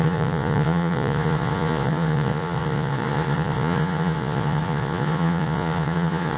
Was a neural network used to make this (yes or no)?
yes